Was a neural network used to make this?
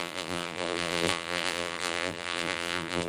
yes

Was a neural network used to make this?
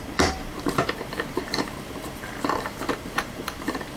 yes